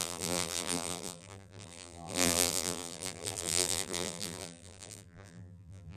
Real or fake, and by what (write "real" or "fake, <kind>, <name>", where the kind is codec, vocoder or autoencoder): fake, vocoder, BigVGAN v2